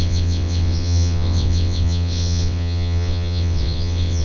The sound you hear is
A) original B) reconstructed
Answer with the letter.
B